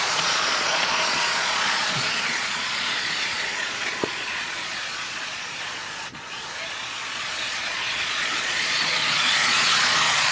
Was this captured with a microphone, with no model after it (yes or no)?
no